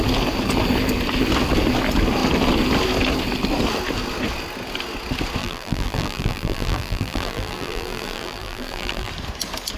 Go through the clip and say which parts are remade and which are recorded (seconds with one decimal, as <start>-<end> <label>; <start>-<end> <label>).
0.0-5.4 recorded; 5.4-9.1 remade; 9.1-9.8 recorded